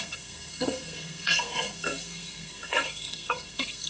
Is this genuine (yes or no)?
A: no